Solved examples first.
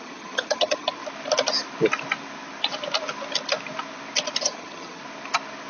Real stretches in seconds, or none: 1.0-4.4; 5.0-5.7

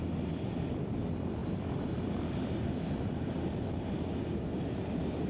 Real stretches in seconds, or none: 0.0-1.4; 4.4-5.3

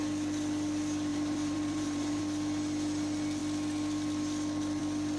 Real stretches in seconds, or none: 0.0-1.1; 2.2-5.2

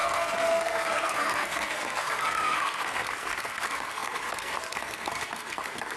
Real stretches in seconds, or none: none